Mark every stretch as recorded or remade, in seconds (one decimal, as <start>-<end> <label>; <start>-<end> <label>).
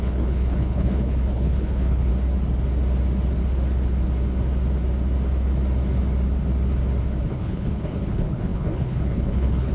0.0-2.1 remade; 2.1-7.3 recorded; 7.3-9.7 remade